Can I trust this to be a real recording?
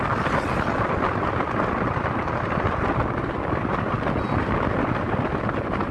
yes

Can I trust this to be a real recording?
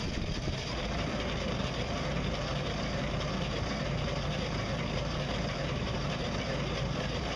no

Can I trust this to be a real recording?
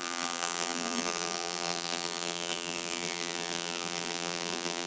no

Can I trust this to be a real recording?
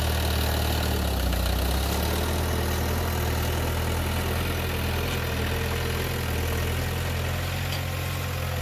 yes